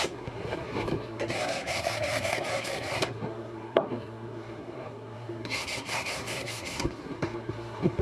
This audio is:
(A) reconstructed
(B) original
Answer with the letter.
A